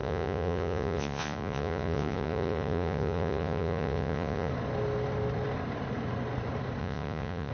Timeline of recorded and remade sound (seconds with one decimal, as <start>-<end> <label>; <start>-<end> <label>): 0.0-4.5 remade; 4.5-6.8 recorded; 6.8-7.5 remade